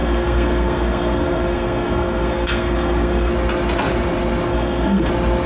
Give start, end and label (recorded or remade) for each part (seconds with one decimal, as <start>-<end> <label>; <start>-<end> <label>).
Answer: 0.0-3.3 remade; 3.3-4.5 recorded; 4.5-5.1 remade; 5.1-5.5 recorded